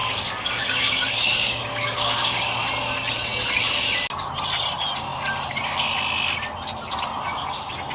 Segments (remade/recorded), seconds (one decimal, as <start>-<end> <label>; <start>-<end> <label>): 0.0-2.4 remade; 2.4-7.9 recorded